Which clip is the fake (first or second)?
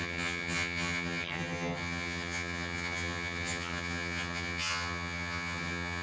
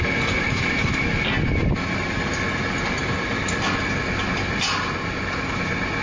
first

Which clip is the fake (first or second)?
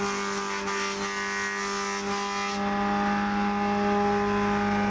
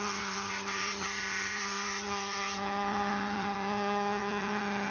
second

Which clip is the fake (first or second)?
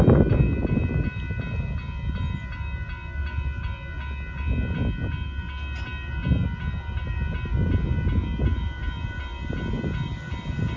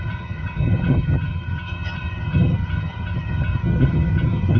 second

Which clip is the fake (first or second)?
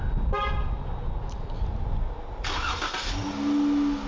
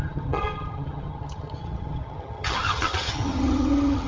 second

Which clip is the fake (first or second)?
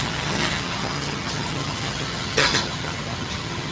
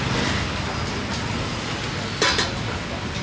first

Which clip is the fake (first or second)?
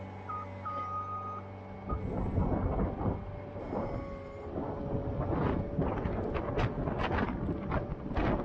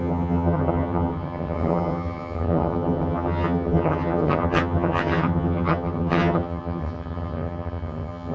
second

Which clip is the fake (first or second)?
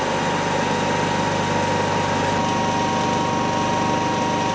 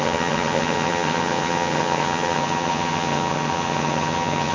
second